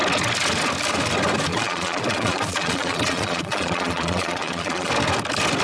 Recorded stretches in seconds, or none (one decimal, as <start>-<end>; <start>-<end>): 0.0-1.5; 4.9-5.6